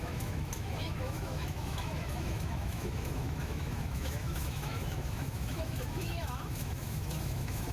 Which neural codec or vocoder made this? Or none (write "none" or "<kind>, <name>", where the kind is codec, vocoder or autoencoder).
autoencoder, DAC-VAE